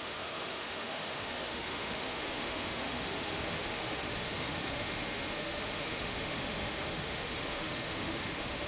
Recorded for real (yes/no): no